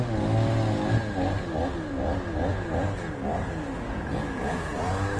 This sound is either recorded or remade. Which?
recorded